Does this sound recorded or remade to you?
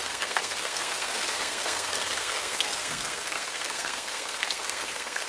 remade